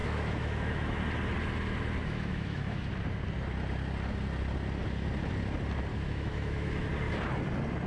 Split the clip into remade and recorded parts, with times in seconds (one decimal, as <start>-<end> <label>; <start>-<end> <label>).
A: 0.0-1.0 remade; 1.0-2.0 recorded; 2.0-2.9 remade; 2.9-5.9 recorded; 5.9-6.9 remade; 6.9-7.9 recorded